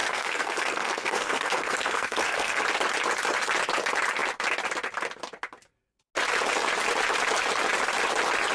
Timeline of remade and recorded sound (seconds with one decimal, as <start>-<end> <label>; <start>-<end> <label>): 0.0-2.6 remade; 2.6-8.5 recorded